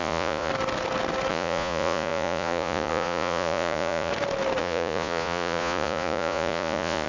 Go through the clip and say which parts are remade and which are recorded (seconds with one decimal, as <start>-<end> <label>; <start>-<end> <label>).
0.0-0.5 remade; 0.5-1.3 recorded; 1.3-4.1 remade; 4.1-4.6 recorded; 4.6-7.1 remade

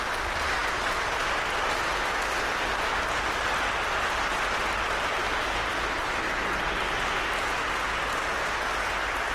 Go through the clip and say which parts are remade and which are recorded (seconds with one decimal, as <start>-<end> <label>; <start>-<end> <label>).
0.0-9.3 recorded

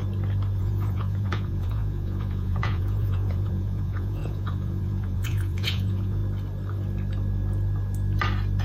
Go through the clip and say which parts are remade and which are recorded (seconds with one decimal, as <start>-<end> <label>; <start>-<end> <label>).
0.0-0.6 recorded; 0.6-6.2 remade; 6.2-8.6 recorded

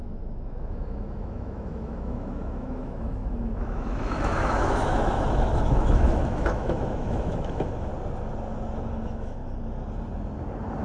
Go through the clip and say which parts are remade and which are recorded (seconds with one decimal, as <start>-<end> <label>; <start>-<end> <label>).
0.0-7.9 remade; 7.9-8.9 recorded; 8.9-9.4 remade; 9.4-10.8 recorded